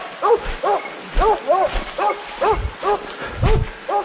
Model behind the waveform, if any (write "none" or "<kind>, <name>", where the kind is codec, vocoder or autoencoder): none